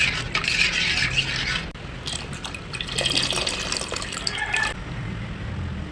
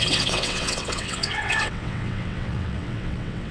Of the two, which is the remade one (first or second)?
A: second